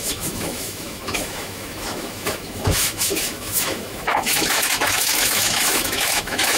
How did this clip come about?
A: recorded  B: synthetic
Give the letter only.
B